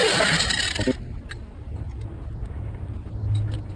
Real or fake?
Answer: real